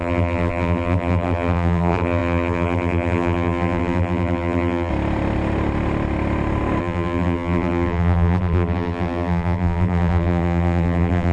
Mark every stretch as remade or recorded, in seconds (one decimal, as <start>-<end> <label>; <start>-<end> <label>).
0.0-4.9 remade; 4.9-6.8 recorded; 6.8-11.3 remade